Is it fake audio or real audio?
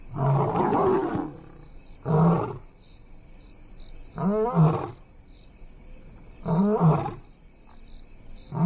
real